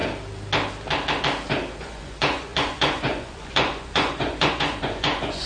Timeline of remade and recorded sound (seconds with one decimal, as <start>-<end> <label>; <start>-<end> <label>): 0.0-1.8 recorded; 1.8-5.5 remade